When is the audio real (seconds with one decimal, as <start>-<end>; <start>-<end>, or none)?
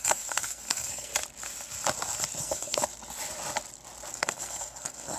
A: 1.1-2.4; 2.8-4.1